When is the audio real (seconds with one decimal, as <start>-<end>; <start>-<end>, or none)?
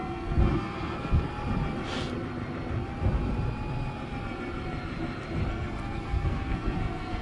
1.3-5.5